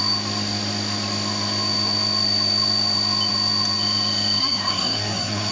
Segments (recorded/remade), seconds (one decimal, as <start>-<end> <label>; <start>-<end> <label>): 0.0-4.4 recorded; 4.4-5.5 remade

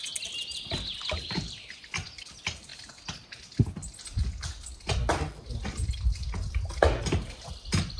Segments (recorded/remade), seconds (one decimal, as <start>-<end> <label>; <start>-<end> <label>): 0.0-8.0 recorded

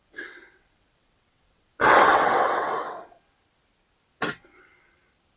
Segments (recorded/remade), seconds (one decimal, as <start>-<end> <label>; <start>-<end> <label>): 0.0-3.2 remade; 3.2-4.1 recorded; 4.1-4.7 remade; 4.7-5.4 recorded

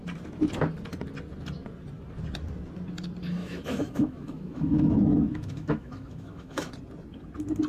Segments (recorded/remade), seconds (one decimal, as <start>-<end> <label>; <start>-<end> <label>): 0.0-3.4 recorded; 3.4-6.7 remade; 6.7-7.7 recorded